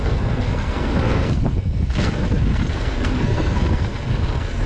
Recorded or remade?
remade